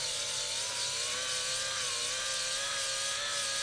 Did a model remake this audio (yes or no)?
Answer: no